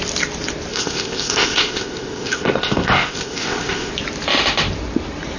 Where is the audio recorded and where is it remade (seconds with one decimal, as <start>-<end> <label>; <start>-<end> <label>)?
0.0-0.7 recorded; 0.7-3.9 remade; 3.9-5.4 recorded